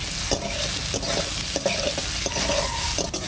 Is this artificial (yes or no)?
no